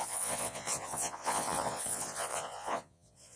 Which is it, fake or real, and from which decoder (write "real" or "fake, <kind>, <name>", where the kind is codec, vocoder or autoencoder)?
fake, vocoder, Vocos